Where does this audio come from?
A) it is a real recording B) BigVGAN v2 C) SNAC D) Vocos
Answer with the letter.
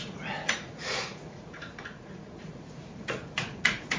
D